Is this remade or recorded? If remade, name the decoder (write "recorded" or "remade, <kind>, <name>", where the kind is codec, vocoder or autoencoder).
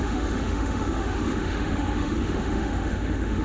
remade, autoencoder, DAC-VAE